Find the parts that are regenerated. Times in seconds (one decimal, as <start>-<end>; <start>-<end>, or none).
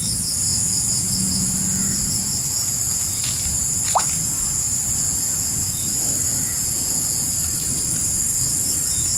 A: 0.5-5.7; 6.3-7.3